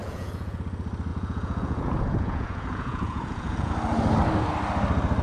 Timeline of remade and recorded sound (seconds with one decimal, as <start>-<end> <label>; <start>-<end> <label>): 0.0-0.6 remade; 0.6-1.1 recorded; 1.1-3.7 remade; 3.7-5.2 recorded